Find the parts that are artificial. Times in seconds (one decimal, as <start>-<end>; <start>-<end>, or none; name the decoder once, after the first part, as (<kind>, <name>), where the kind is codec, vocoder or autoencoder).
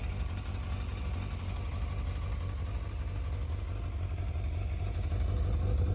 none